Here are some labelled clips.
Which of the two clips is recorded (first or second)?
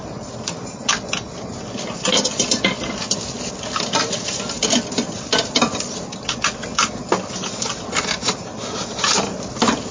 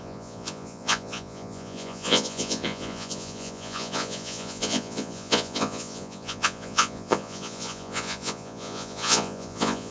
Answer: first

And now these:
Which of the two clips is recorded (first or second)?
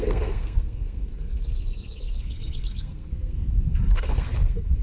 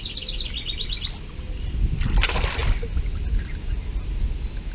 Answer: second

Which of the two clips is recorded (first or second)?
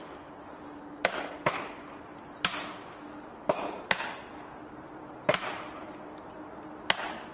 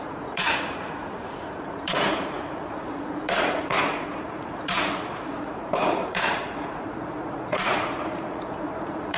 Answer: first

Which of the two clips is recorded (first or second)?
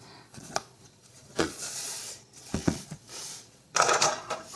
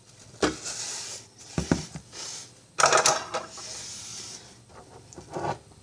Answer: second